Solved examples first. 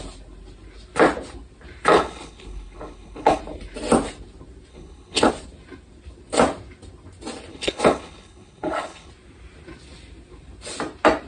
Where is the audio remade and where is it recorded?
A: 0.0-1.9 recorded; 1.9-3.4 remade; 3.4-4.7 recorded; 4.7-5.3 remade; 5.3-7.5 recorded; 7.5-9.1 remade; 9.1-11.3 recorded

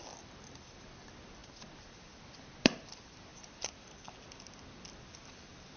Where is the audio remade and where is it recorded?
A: 0.0-5.8 remade

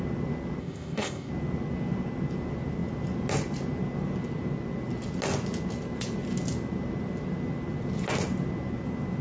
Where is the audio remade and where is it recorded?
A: 0.0-0.6 recorded; 0.6-1.3 remade; 1.3-9.2 recorded

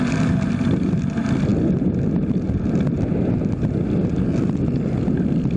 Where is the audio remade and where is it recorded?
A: 0.0-5.6 recorded